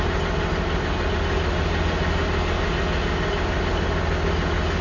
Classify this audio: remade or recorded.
recorded